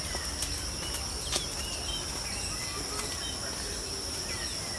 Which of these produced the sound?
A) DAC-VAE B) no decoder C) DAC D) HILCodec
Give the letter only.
B